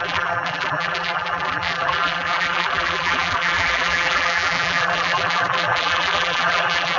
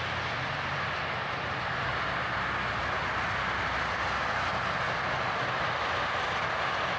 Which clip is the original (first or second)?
second